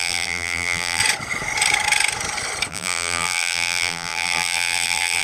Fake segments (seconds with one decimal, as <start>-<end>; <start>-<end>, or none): 0.0-1.0; 2.7-5.2